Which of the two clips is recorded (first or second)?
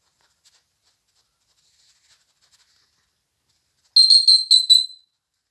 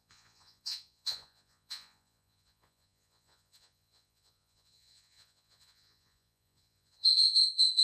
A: first